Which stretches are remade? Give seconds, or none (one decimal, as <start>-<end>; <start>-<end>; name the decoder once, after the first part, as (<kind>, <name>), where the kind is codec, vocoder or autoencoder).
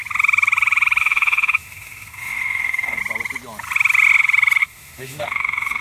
1.0-3.0 (autoencoder, DAC-VAE); 4.6-5.8